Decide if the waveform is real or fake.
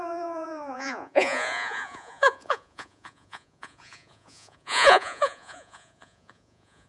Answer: fake